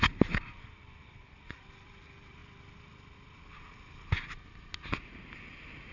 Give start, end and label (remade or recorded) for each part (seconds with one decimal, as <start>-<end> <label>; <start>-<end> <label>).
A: 0.0-1.0 recorded; 1.0-1.6 remade; 1.6-5.9 recorded

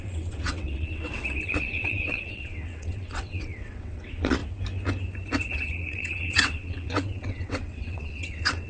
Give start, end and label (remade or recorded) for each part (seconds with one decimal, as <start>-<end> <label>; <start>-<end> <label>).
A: 0.0-4.4 remade; 4.4-5.5 recorded; 5.5-8.7 remade

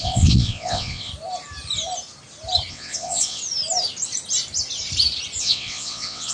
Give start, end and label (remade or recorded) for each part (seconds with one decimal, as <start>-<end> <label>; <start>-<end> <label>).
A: 0.0-1.1 remade; 1.1-2.7 recorded; 2.7-3.4 remade; 3.4-5.4 recorded; 5.4-6.3 remade

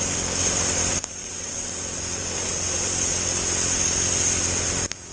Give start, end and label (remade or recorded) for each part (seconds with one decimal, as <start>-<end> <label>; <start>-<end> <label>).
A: 0.0-1.2 recorded; 1.2-1.8 remade; 1.8-5.1 recorded

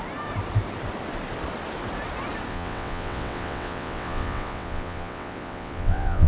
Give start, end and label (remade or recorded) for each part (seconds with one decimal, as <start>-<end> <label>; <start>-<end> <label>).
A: 0.0-2.5 recorded; 2.5-6.3 remade

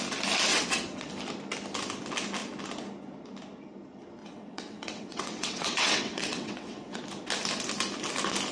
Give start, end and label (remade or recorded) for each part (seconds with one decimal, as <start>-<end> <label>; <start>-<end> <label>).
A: 0.0-0.5 recorded; 0.5-1.1 remade; 1.1-4.2 recorded; 4.2-7.0 remade; 7.0-8.5 recorded

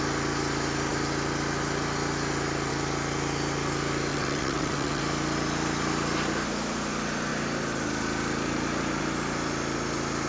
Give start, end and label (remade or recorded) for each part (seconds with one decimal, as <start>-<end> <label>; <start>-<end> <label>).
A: 0.0-4.1 recorded; 4.1-5.0 remade; 5.0-10.3 recorded